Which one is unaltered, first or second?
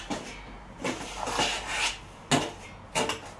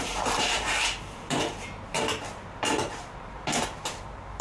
first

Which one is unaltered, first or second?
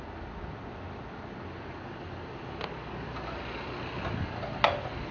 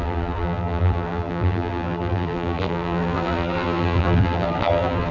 first